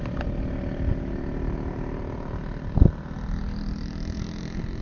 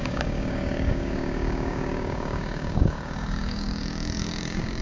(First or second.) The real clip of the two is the first